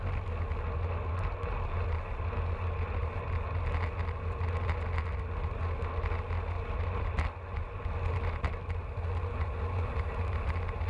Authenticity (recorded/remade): recorded